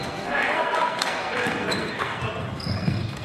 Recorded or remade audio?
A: remade